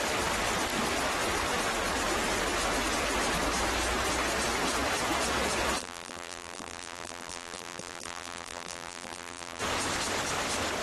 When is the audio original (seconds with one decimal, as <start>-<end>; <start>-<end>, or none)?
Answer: 0.0-5.8; 9.6-10.8